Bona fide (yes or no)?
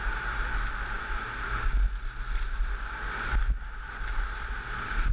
yes